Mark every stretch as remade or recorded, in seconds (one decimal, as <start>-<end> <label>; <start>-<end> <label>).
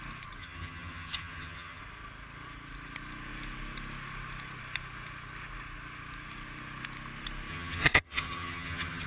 0.0-0.4 recorded; 0.4-1.8 remade; 1.8-7.5 recorded; 7.5-9.1 remade